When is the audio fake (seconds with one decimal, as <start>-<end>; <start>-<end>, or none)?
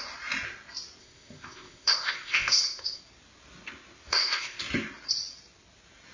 1.0-3.0; 4.1-4.6